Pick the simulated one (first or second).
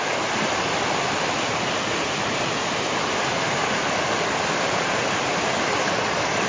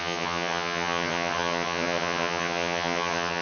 second